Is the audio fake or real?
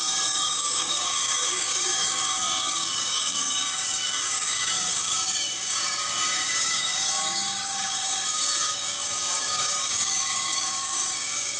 fake